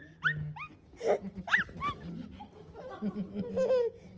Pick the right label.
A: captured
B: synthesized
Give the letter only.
A